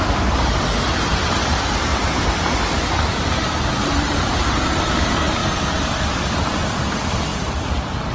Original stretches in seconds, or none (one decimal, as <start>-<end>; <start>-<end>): 0.0-1.9; 4.8-7.3